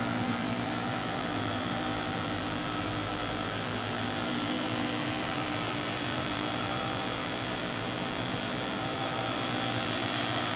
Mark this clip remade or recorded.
remade